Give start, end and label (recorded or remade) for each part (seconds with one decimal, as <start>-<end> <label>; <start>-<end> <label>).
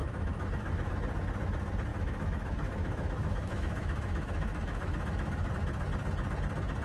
0.0-0.9 remade; 0.9-1.9 recorded; 1.9-5.5 remade; 5.5-6.8 recorded